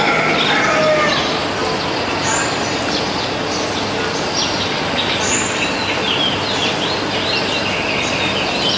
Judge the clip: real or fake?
real